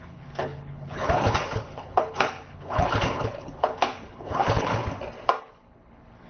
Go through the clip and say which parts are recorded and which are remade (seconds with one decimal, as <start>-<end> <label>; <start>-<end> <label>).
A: 0.0-4.8 remade; 4.8-5.4 recorded; 5.4-6.3 remade